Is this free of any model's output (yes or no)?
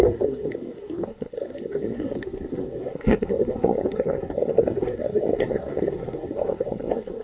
no